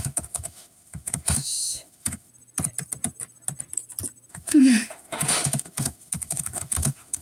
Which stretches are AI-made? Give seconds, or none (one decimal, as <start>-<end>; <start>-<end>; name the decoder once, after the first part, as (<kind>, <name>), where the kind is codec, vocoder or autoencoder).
0.0-2.3 (autoencoder, DAC-VAE); 4.3-7.2